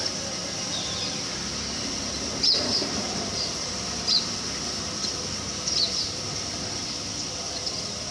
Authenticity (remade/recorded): recorded